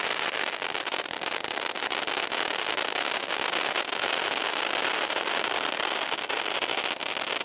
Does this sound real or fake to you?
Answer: real